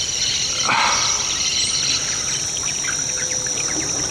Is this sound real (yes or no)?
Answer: yes